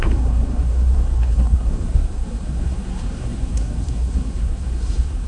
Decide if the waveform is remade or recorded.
remade